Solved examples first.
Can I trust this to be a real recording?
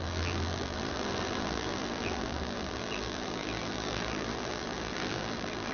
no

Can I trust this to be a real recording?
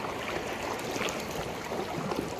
yes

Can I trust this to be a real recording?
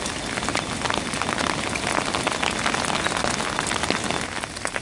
yes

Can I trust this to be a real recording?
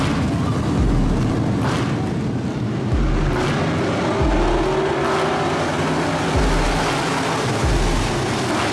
yes